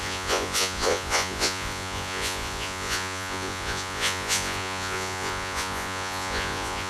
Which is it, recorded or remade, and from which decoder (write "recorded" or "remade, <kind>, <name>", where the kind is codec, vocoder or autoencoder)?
remade, vocoder, Vocos